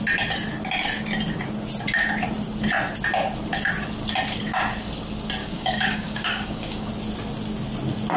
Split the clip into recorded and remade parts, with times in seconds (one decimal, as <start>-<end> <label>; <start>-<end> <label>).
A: 0.0-5.4 recorded; 5.4-6.9 remade; 6.9-8.2 recorded